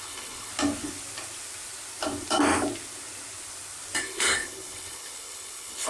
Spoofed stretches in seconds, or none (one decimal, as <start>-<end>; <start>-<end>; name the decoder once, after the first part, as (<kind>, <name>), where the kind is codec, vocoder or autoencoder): 0.0-0.5 (codec, HILCodec); 4.0-5.9